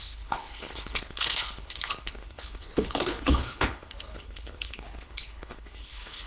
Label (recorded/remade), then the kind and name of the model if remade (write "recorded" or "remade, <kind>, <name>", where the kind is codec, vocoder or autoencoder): remade, codec, HILCodec